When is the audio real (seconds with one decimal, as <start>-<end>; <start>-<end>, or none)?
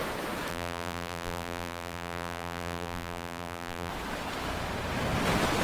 0.0-0.5; 3.9-5.6